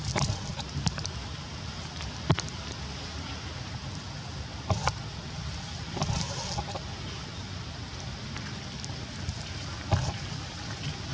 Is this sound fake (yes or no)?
no